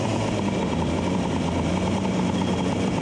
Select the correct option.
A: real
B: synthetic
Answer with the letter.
B